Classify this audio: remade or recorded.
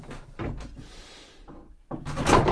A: recorded